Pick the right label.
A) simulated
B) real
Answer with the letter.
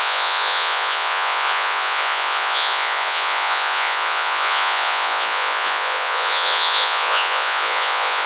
A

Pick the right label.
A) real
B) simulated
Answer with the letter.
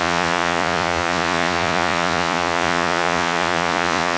B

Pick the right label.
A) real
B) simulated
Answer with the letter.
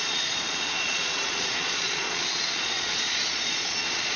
B